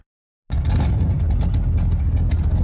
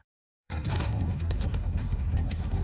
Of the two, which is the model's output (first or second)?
second